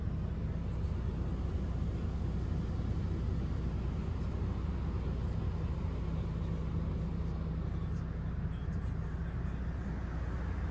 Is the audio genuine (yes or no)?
yes